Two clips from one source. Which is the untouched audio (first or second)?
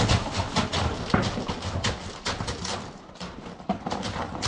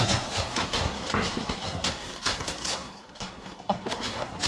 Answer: first